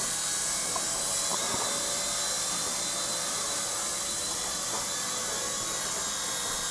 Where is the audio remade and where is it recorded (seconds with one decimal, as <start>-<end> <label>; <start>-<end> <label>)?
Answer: 0.0-1.3 recorded; 1.3-5.3 remade; 5.3-6.7 recorded